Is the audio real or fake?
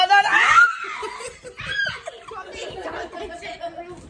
real